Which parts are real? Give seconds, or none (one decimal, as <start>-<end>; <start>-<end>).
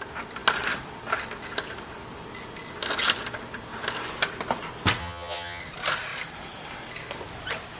0.0-5.0; 5.6-7.8